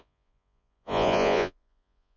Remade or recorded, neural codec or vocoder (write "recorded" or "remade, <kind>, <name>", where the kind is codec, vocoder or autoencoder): remade, vocoder, Vocos